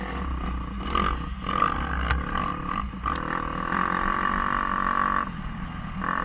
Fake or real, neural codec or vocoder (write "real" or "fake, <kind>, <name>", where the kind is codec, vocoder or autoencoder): real